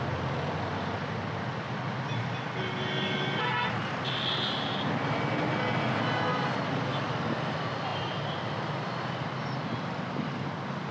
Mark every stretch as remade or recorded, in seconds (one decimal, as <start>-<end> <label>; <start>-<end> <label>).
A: 0.0-10.9 recorded